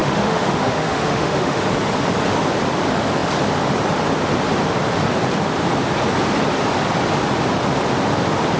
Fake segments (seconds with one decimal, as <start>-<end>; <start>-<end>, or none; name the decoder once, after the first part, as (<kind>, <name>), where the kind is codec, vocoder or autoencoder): 0.0-1.6 (autoencoder, DAC-VAE)